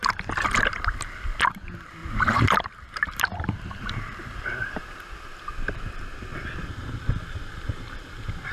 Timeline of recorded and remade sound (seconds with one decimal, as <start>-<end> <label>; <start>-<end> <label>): 0.0-2.0 recorded; 2.0-5.9 remade; 5.9-8.5 recorded